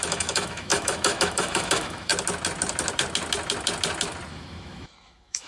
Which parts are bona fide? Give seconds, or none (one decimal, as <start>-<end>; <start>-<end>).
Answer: 2.1-4.3